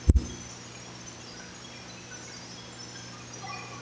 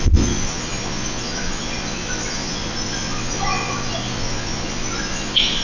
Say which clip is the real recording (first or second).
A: first